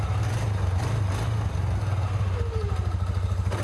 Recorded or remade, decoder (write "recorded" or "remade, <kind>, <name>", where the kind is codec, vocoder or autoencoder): recorded